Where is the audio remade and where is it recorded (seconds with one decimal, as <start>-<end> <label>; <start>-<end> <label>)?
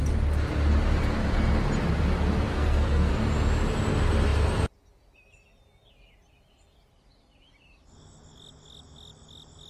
0.0-2.5 recorded; 2.5-3.1 remade; 3.1-9.7 recorded